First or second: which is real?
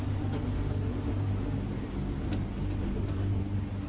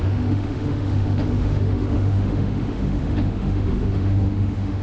first